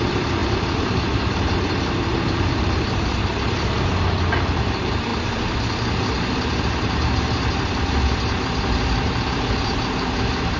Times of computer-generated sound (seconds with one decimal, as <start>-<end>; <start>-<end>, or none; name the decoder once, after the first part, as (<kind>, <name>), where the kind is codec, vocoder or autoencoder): 0.0-5.1 (vocoder, BigVGAN v2); 6.6-10.6